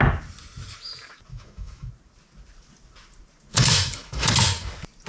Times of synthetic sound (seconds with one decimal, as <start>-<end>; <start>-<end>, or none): 1.3-1.9; 3.5-4.3